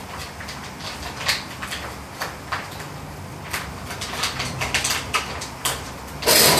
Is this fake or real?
real